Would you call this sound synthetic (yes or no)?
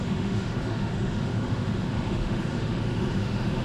yes